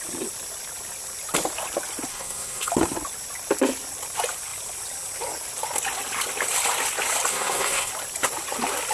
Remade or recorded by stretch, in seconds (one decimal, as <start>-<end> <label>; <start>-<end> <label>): 0.0-2.1 recorded; 2.1-2.7 remade; 2.7-7.3 recorded; 7.3-7.9 remade; 7.9-8.9 recorded